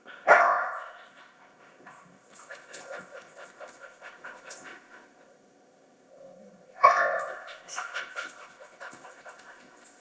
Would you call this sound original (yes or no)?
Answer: no